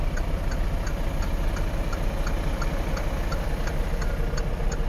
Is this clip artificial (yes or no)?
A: no